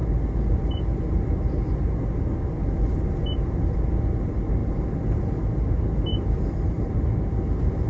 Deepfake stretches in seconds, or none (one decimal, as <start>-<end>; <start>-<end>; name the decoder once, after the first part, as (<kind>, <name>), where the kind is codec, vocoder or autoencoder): 4.6-5.3 (vocoder, BigVGAN v2); 6.1-7.0